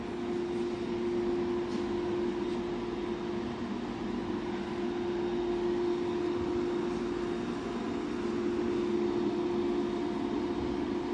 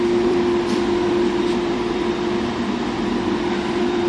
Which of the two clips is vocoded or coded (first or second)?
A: second